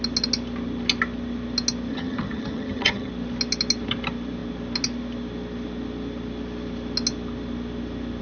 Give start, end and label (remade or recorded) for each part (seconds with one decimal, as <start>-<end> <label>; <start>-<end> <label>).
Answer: 0.0-1.9 recorded; 1.9-3.1 remade; 3.1-8.2 recorded